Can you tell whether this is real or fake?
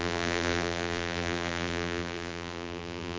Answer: fake